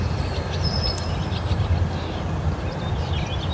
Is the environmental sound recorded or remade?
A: recorded